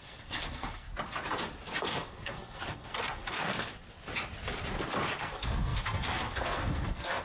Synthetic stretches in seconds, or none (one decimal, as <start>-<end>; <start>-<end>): 0.0-0.9; 1.8-3.7; 5.2-7.2